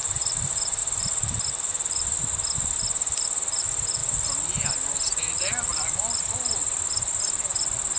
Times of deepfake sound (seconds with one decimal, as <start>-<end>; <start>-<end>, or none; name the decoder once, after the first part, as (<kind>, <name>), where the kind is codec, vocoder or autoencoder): none